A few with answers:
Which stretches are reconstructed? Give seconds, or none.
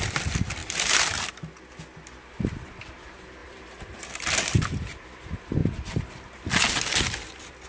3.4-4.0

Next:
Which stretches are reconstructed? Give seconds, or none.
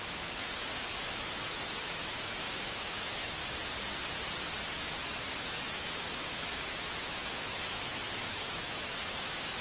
0.0-3.4; 4.7-9.6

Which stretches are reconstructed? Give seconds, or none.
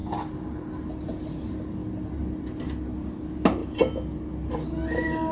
none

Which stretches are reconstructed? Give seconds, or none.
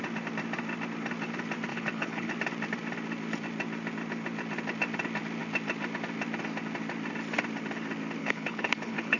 1.7-2.3; 8.2-9.2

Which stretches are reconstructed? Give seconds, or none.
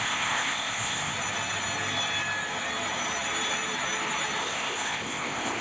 0.0-1.1; 4.4-5.6